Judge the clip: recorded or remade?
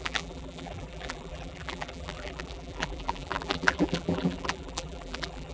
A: remade